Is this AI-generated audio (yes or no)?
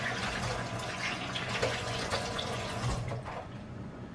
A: yes